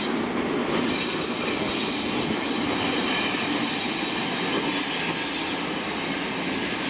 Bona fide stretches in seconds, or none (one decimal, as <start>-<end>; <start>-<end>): 0.0-6.9